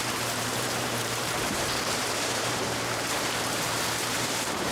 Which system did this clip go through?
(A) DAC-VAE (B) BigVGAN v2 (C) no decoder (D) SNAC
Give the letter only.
B